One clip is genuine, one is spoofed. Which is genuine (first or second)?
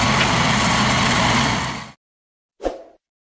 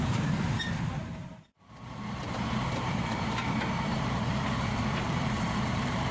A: first